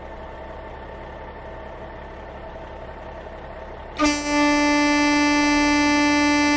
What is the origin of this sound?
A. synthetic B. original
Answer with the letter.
B